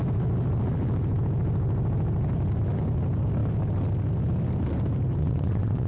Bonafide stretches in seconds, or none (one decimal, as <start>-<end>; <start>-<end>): 0.0-5.2